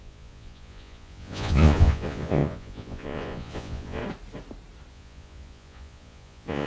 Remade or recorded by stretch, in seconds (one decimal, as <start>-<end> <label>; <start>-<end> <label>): 0.0-4.0 remade; 4.0-4.9 recorded; 4.9-6.7 remade